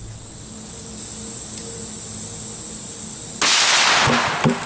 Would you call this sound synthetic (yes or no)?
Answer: no